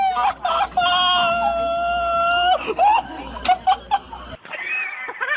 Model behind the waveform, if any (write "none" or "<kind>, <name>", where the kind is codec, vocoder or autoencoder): none